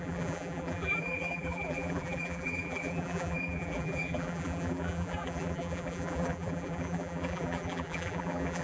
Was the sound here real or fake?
fake